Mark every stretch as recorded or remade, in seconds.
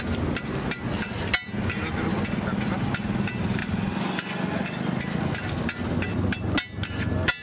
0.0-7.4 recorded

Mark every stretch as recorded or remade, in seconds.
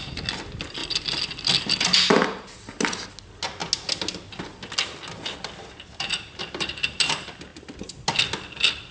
0.0-0.8 recorded; 0.8-1.6 remade; 1.6-8.9 recorded